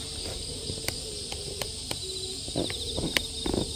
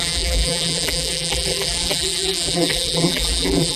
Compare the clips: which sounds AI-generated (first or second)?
second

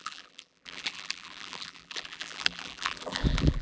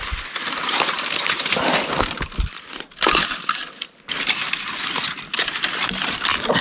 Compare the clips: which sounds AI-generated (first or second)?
first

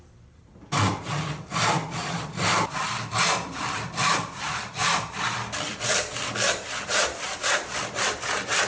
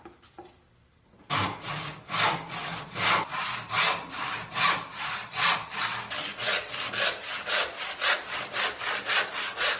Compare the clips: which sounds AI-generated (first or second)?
first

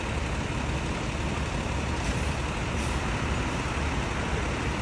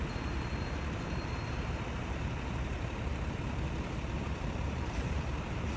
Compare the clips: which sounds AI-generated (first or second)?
second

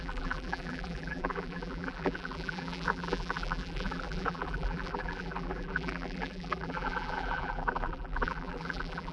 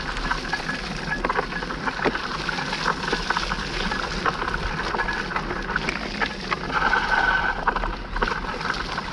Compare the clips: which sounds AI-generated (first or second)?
first